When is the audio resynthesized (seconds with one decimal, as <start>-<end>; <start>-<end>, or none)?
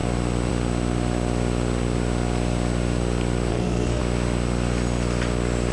3.5-4.0